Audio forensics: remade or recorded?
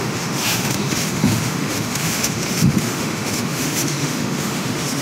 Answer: remade